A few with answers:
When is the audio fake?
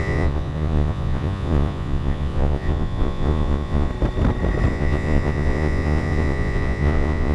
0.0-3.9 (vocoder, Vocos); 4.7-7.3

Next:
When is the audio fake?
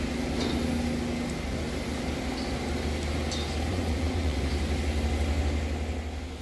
3.7-4.4 (vocoder, Vocos)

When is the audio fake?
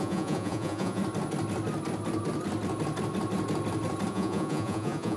0.0-1.0 (vocoder, Vocos); 4.1-5.2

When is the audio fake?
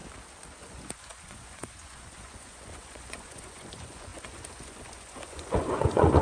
0.6-6.2 (vocoder, Vocos)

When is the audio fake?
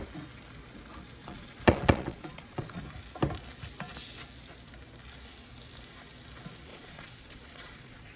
1.2-2.8 (vocoder, Vocos); 6.7-8.2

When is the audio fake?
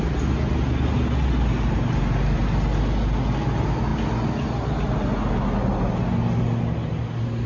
none